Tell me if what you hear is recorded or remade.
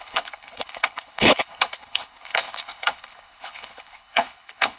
remade